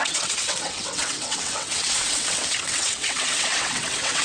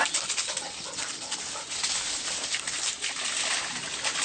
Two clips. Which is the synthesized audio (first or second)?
first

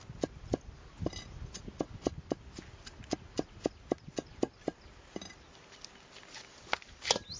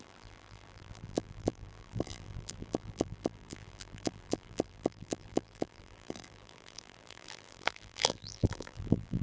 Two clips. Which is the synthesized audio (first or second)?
second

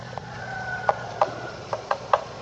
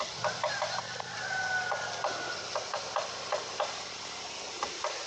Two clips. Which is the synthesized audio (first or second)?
first